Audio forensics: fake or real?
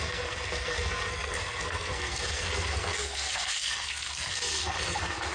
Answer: fake